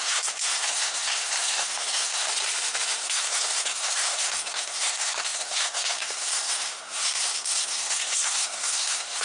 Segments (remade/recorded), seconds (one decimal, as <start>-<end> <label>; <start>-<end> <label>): 0.0-2.3 remade; 2.3-3.0 recorded; 3.0-9.2 remade